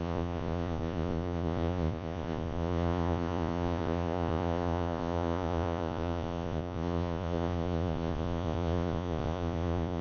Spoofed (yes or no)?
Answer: yes